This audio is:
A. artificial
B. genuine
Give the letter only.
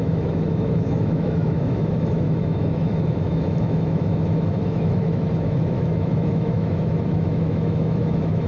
A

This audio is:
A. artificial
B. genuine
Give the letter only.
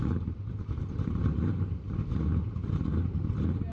A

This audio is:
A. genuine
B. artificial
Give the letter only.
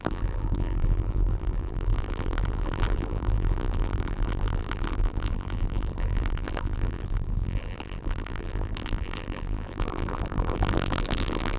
B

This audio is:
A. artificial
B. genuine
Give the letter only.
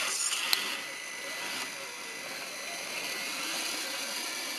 B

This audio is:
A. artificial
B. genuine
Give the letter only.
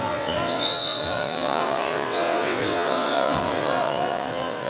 A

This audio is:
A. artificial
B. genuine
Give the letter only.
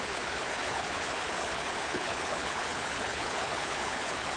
A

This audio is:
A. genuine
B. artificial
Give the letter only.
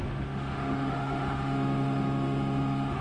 B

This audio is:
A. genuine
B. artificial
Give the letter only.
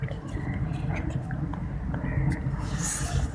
A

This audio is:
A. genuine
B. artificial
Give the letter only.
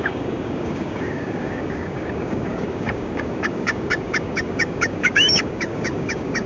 B